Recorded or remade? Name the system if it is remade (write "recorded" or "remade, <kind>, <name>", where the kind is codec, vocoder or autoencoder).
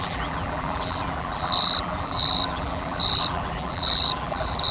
remade, vocoder, BigVGAN v2